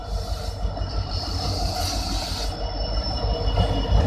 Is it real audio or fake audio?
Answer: fake